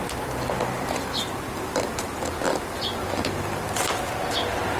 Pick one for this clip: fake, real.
real